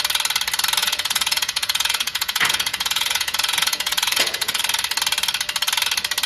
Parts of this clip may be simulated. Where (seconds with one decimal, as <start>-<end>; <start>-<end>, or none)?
0.8-4.6